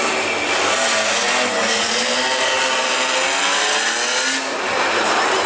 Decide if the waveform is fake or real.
real